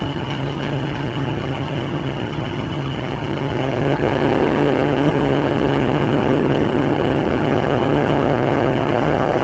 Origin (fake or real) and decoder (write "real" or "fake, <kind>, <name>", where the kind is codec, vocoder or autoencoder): fake, vocoder, HiFi-GAN